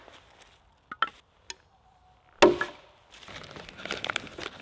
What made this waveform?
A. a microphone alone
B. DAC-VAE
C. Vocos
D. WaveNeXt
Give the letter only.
A